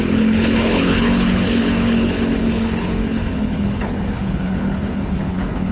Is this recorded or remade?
remade